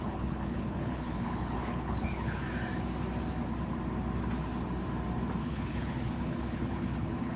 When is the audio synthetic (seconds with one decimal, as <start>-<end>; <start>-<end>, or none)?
0.0-2.4; 5.4-7.4